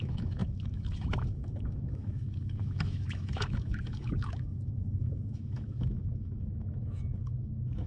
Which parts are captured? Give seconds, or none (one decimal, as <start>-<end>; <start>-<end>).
none